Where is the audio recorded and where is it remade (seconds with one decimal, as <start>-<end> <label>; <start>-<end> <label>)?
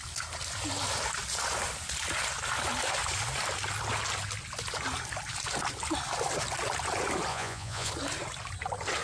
0.0-7.3 recorded; 7.3-7.9 remade; 7.9-9.0 recorded